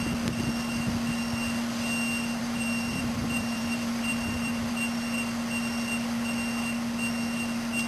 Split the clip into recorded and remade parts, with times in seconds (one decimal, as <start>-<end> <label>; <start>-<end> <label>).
0.0-2.4 recorded; 2.4-4.7 remade; 4.7-7.9 recorded